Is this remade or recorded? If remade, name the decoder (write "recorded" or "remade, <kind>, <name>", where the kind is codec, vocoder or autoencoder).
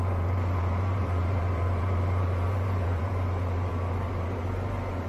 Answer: remade, vocoder, BigVGAN v2